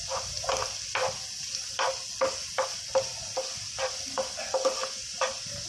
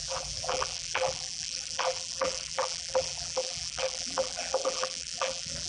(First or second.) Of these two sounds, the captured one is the first